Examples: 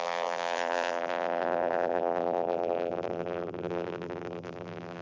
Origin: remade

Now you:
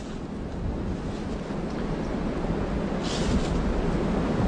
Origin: recorded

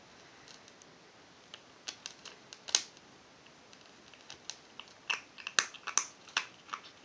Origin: recorded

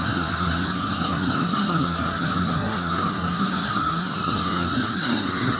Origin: remade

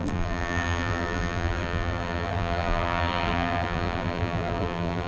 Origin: remade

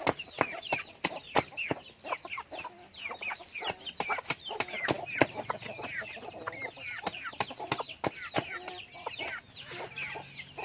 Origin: recorded